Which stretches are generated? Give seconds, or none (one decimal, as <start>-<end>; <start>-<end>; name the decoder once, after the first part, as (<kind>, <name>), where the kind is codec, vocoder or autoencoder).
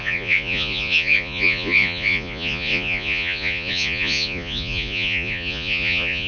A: 0.0-6.3 (vocoder, Vocos)